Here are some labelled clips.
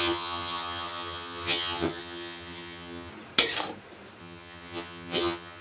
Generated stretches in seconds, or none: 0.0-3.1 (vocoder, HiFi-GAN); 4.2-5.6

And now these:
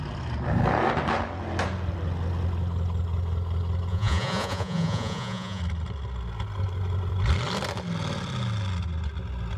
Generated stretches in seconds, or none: 3.9-5.6 (vocoder, Vocos)

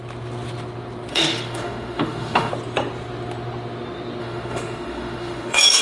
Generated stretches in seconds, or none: 1.1-2.5 (autoencoder, DAC-VAE); 4.2-5.8